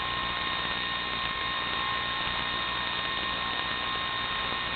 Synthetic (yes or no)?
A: no